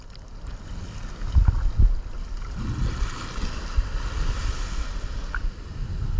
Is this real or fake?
real